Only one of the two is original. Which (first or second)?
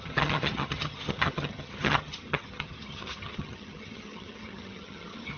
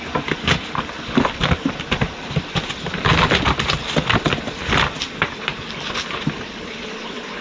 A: second